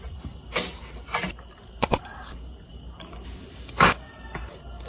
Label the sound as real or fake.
fake